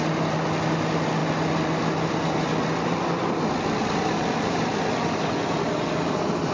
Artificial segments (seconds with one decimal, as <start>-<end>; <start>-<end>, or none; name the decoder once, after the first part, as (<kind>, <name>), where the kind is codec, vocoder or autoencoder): none